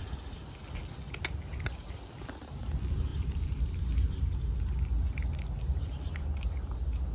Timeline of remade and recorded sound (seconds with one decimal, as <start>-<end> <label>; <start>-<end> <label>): 0.0-7.1 recorded